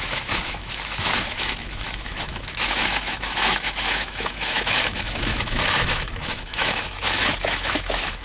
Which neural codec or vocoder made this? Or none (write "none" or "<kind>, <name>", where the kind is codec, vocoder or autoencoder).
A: autoencoder, DAC-VAE